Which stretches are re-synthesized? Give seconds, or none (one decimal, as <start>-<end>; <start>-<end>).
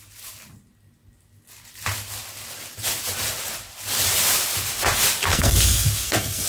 5.3-6.5